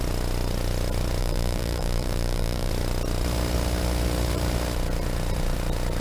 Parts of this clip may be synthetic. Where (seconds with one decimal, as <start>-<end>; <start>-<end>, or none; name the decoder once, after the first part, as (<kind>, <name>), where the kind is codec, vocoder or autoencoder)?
1.2-2.7 (vocoder, BigVGAN v2)